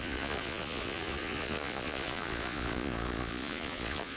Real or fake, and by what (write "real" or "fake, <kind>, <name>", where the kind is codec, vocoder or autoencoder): fake, vocoder, Vocos